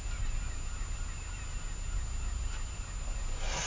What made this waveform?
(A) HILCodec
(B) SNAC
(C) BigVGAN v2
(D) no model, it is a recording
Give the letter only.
D